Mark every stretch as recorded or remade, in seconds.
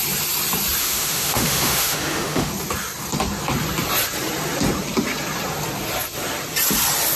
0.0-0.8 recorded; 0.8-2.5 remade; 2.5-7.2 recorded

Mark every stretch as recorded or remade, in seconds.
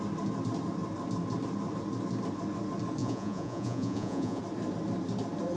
0.0-3.0 recorded; 3.0-4.4 remade; 4.4-5.6 recorded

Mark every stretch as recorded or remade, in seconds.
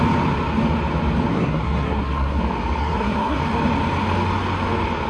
0.0-1.3 recorded; 1.3-2.4 remade; 2.4-2.8 recorded; 2.8-3.4 remade; 3.4-5.1 recorded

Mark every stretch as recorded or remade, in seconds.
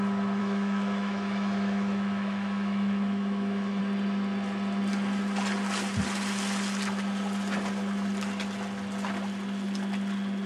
0.0-0.4 recorded; 0.4-3.8 remade; 3.8-10.5 recorded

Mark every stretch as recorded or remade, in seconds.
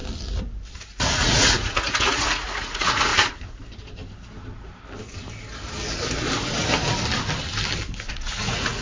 0.0-1.0 recorded; 1.0-3.1 remade; 3.1-8.1 recorded; 8.1-8.8 remade